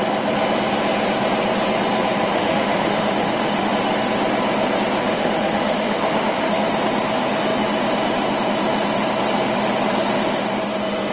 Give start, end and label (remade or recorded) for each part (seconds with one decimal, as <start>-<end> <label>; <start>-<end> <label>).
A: 0.0-2.3 recorded; 2.3-3.7 remade; 3.7-5.0 recorded; 5.0-6.6 remade; 6.6-11.1 recorded